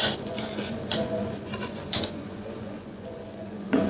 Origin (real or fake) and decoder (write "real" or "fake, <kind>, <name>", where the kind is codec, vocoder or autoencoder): fake, vocoder, Vocos